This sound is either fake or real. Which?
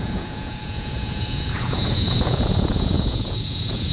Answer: fake